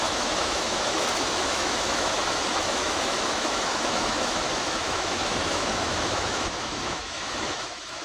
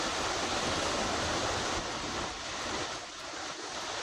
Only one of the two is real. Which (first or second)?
second